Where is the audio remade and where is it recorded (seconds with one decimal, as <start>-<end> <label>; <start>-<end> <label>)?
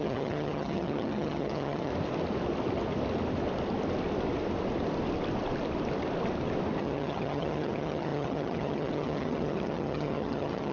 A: 0.0-1.9 remade; 1.9-6.8 recorded; 6.8-10.7 remade